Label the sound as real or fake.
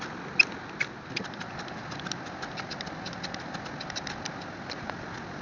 real